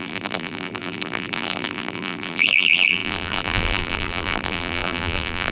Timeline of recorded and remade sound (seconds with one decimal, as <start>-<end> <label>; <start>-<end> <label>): 0.0-5.5 remade